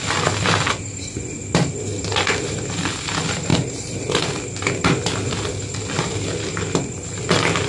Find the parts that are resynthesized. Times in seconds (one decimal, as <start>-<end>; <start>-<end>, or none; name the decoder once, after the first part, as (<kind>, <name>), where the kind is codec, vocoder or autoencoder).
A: none